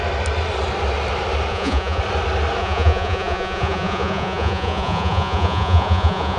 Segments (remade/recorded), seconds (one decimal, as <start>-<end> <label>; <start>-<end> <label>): 0.0-1.5 recorded; 1.5-2.0 remade; 2.0-2.6 recorded; 2.6-6.4 remade